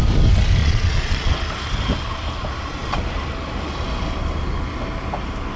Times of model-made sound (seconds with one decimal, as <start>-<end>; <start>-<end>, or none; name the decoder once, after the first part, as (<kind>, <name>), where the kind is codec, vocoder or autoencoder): 0.6-1.3 (vocoder, Vocos)